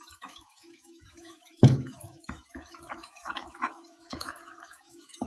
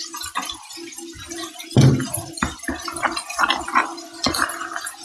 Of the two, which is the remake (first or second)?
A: first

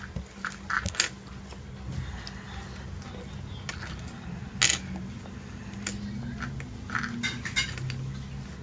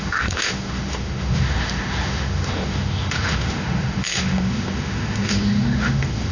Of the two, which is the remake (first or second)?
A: second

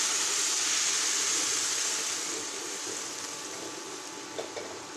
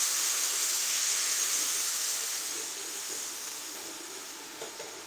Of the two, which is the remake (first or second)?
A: second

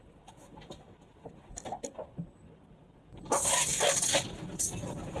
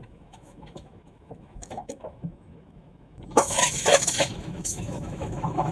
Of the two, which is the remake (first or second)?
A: second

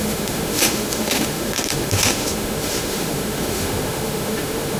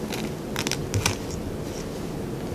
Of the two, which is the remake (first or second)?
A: first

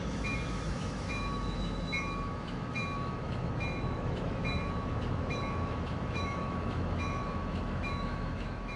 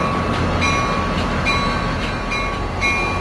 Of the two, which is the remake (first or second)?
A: first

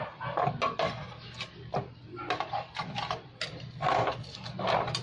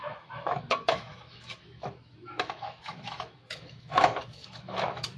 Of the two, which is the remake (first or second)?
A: second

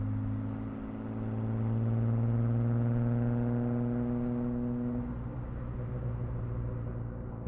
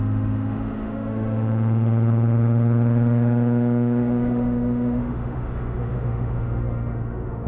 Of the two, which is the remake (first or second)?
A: second